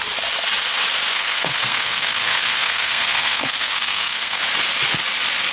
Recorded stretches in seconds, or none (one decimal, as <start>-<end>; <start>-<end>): 0.0-1.1; 4.4-5.5